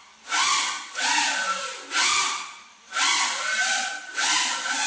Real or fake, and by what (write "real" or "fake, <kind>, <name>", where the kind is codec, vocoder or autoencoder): real